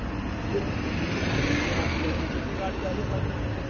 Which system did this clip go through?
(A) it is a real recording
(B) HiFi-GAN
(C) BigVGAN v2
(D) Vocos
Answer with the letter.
A